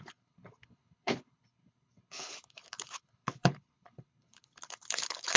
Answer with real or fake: fake